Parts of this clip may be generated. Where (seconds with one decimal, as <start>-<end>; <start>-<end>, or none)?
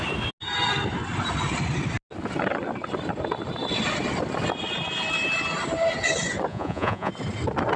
6.5-7.1